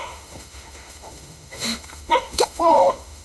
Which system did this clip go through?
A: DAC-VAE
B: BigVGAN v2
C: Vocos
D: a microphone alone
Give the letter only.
A